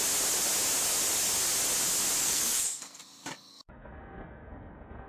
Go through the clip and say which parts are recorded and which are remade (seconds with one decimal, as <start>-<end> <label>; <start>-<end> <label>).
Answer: 0.0-2.2 recorded; 2.2-3.0 remade; 3.0-3.5 recorded; 3.5-5.1 remade